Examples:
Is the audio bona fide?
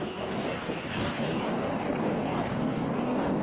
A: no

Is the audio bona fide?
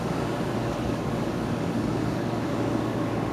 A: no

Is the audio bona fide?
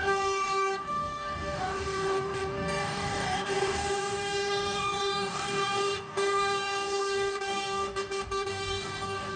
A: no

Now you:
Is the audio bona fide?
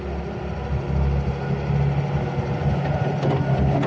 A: yes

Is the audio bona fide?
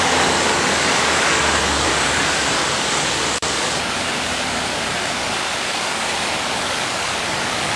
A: no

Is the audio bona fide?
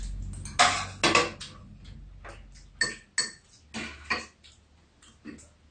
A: yes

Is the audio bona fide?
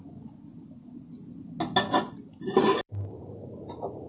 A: yes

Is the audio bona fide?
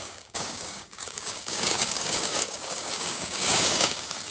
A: no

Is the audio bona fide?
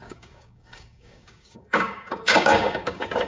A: no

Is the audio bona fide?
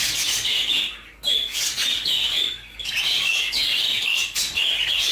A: no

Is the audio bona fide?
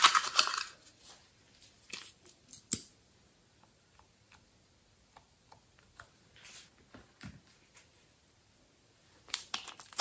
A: yes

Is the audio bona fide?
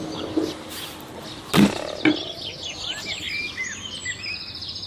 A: yes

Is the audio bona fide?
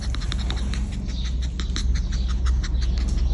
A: yes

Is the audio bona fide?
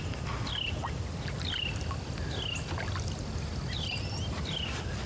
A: yes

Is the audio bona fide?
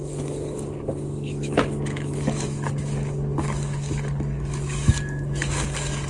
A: no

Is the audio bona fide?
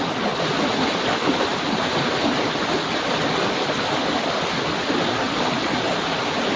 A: yes